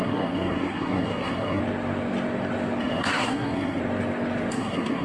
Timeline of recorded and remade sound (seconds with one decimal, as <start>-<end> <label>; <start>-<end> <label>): 0.0-1.6 remade; 1.6-2.8 recorded; 2.8-3.8 remade; 3.8-4.5 recorded; 4.5-5.0 remade